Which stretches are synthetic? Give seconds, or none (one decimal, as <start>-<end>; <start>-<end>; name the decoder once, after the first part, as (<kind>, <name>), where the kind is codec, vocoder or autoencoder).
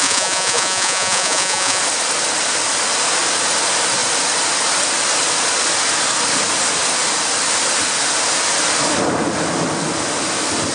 0.0-1.8 (vocoder, Vocos)